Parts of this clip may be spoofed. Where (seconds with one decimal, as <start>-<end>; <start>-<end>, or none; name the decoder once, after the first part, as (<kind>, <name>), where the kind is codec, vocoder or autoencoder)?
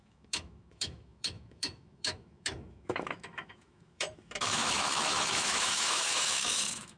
0.0-7.0 (autoencoder, DAC-VAE)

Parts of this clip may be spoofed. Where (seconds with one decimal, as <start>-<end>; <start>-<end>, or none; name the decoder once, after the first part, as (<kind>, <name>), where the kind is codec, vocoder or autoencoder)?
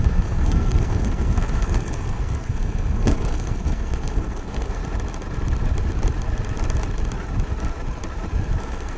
0.0-4.8 (codec, SNAC); 8.6-9.0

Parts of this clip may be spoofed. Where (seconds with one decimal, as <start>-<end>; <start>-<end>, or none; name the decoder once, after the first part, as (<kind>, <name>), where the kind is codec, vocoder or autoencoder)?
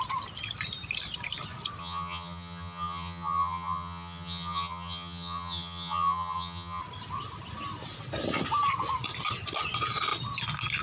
1.8-6.8 (vocoder, HiFi-GAN)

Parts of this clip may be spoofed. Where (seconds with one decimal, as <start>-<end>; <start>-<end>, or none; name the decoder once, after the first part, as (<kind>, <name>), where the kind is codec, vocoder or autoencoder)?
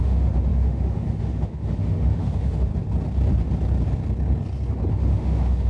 0.0-2.7 (autoencoder, DAC-VAE); 4.9-5.7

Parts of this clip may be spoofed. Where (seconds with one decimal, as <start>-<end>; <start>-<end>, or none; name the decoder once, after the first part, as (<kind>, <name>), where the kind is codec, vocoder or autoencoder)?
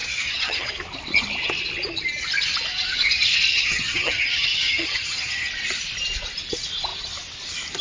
0.0-0.7 (vocoder, HiFi-GAN); 3.5-5.5